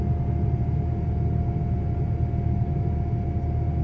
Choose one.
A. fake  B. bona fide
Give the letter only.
B